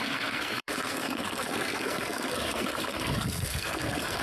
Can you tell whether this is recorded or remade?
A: remade